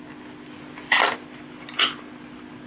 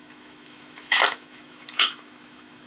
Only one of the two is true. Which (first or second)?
first